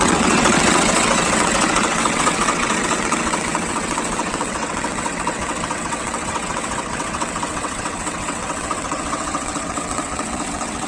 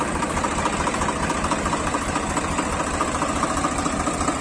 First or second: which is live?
second